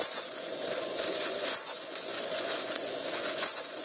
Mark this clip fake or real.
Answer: fake